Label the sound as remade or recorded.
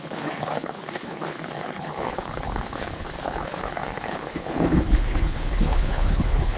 remade